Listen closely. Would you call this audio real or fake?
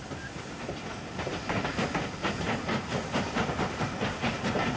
real